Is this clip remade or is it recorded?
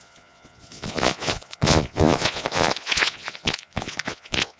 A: remade